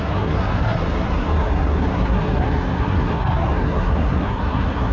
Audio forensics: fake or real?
fake